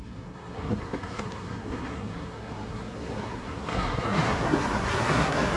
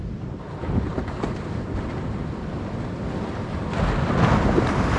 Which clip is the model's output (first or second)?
first